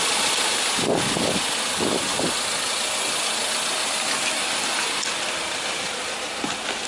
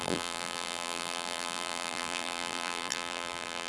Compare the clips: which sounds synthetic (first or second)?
second